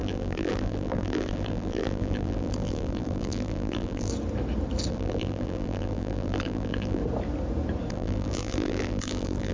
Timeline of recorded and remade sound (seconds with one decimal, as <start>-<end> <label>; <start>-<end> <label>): 0.0-4.1 remade; 4.1-4.9 recorded; 4.9-7.0 remade; 7.0-7.9 recorded; 7.9-9.5 remade